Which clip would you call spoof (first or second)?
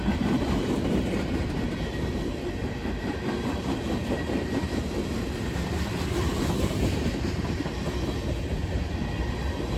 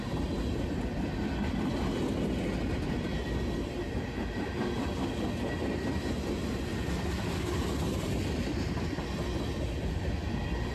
first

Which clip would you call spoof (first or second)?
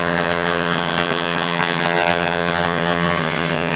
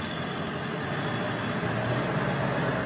first